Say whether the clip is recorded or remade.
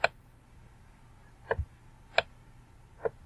recorded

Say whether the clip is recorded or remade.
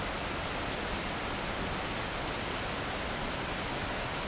recorded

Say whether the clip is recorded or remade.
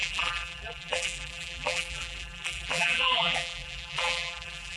remade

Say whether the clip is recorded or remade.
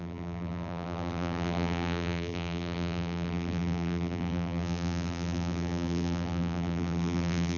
remade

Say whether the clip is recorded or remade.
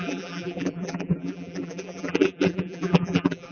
remade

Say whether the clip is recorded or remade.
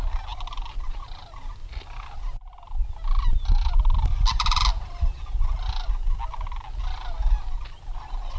recorded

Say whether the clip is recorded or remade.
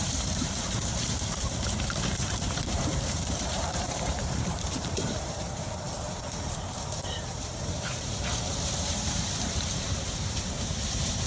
remade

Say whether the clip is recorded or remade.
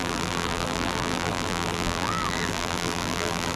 remade